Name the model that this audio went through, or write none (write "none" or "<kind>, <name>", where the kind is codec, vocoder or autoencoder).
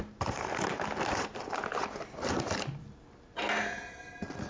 none